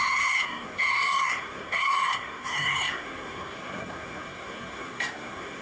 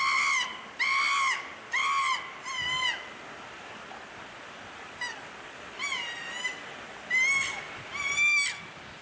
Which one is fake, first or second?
first